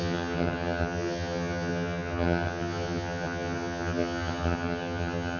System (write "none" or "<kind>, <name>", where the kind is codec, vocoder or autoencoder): vocoder, HiFi-GAN